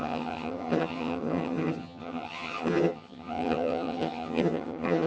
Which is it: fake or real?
fake